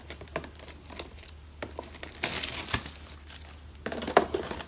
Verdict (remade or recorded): recorded